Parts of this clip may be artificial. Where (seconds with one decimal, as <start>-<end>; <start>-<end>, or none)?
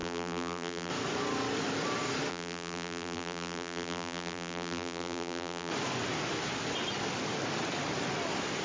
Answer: 0.0-0.9; 2.3-5.7